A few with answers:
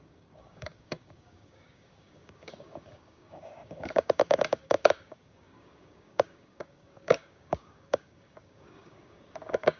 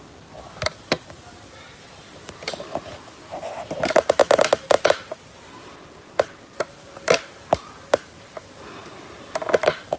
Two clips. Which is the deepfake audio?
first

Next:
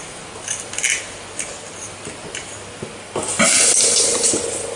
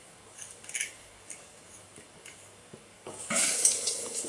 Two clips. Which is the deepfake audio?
second